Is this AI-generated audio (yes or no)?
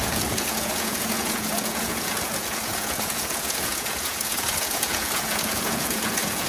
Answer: yes